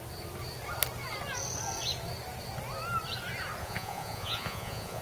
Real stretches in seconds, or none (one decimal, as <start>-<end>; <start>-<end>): 0.0-3.6